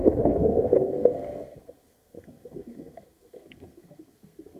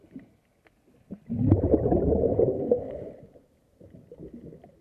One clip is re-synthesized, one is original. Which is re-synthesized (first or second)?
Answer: first